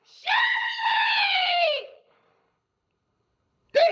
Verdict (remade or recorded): remade